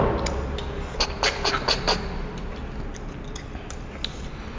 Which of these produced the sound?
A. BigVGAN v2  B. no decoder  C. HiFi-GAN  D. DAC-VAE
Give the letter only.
B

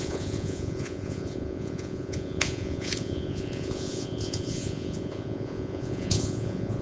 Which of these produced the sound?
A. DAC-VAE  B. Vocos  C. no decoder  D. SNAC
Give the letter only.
B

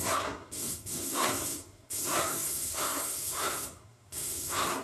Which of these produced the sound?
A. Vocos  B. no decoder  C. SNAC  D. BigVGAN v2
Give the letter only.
C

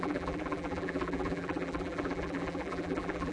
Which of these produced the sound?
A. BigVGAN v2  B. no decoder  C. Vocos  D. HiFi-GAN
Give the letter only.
A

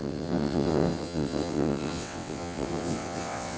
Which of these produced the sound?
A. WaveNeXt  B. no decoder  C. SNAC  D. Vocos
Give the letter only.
A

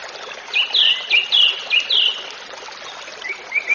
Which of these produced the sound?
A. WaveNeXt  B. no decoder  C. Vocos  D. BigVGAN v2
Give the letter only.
B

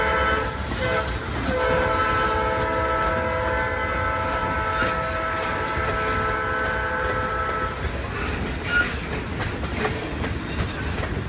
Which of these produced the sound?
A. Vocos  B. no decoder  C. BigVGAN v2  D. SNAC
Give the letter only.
B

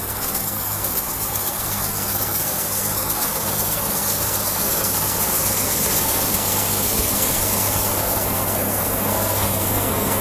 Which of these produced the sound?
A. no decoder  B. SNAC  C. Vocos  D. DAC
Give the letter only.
B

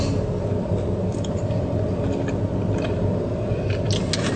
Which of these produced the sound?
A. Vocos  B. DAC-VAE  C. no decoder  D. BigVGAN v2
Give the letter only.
C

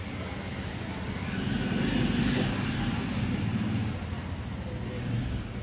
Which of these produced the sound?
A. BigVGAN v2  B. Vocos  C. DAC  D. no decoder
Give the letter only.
D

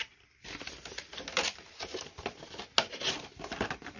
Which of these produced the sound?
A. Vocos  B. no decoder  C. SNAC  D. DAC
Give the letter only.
B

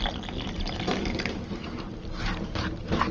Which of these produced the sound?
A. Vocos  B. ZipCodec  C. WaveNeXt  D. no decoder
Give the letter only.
D